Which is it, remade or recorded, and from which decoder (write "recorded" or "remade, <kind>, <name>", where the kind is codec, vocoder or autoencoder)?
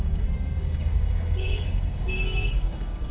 remade, codec, DAC